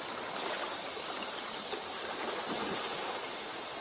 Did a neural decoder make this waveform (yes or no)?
no